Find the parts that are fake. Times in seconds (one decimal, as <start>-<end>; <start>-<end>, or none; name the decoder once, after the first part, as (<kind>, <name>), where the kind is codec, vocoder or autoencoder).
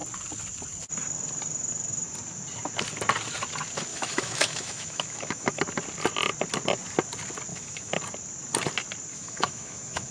3.9-5.6 (autoencoder, DAC-VAE); 7.5-8.0; 9.1-10.1